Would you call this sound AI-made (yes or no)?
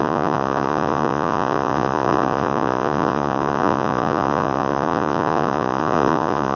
yes